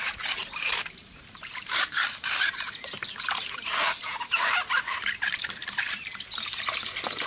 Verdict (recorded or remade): remade